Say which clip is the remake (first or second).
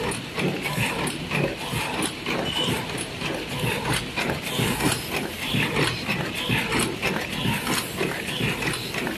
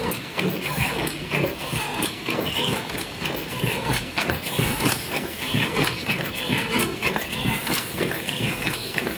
second